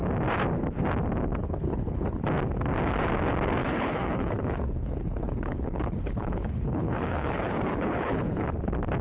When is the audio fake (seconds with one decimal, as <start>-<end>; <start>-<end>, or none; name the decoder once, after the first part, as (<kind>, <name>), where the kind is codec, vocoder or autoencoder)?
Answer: 1.4-2.2 (codec, HILCodec); 3.6-8.5